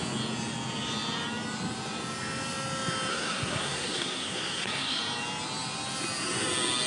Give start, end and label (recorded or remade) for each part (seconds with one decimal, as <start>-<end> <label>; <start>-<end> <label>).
0.0-3.1 recorded; 3.1-5.0 remade; 5.0-6.9 recorded